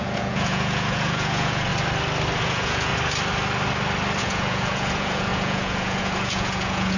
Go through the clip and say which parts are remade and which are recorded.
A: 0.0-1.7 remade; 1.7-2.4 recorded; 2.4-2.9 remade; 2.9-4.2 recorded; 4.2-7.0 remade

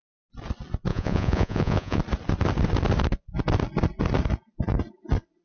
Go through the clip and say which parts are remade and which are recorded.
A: 0.0-0.9 recorded; 0.9-2.0 remade; 2.0-5.4 recorded

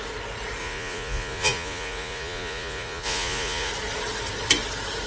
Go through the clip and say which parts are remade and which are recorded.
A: 0.0-0.6 recorded; 0.6-3.7 remade; 3.7-5.1 recorded

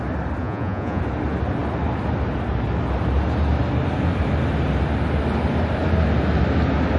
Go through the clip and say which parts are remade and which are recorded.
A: 0.0-0.4 recorded; 0.4-1.0 remade; 1.0-7.0 recorded

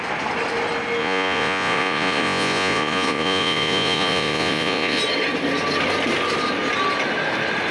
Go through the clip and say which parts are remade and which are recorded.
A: 0.0-1.0 recorded; 1.0-5.0 remade; 5.0-7.7 recorded

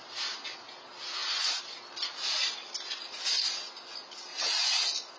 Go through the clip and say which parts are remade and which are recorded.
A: 0.0-5.2 recorded